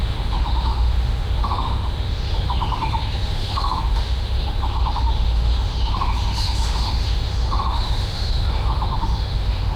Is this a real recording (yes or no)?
no